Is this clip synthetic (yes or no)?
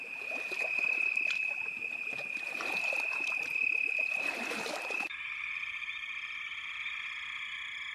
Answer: no